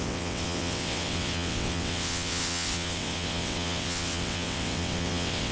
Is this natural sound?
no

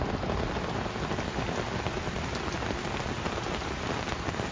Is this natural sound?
yes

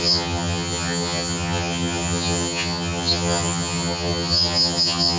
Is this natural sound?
no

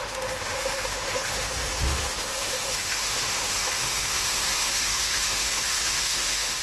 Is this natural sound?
no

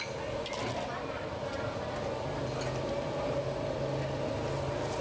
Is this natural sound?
yes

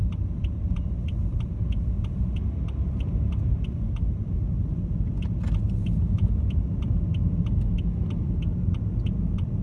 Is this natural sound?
yes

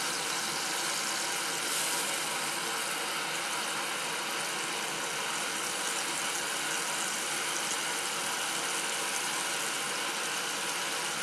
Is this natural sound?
yes